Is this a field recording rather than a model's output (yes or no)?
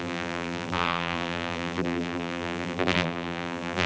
no